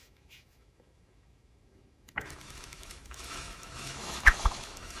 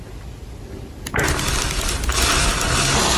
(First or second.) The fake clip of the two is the first